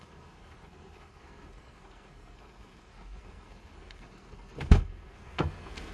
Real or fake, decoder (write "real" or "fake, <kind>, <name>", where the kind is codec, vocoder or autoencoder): fake, codec, SNAC